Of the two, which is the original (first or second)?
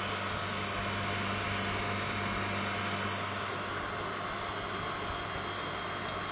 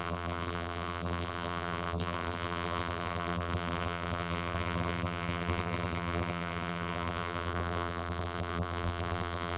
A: first